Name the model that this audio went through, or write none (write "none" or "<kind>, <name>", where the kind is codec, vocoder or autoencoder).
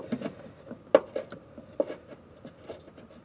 none